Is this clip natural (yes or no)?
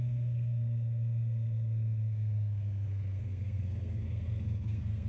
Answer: no